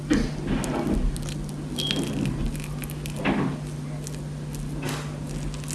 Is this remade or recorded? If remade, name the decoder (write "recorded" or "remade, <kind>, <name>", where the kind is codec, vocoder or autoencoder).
recorded